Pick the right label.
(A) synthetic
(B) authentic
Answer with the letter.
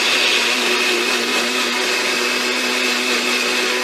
B